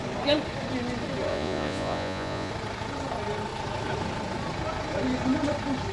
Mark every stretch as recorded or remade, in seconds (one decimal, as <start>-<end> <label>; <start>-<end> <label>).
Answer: 0.0-1.3 recorded; 1.3-2.5 remade; 2.5-5.9 recorded